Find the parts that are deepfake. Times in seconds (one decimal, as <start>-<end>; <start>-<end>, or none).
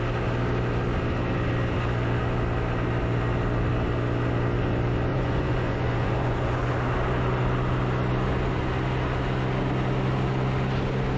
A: 5.1-6.7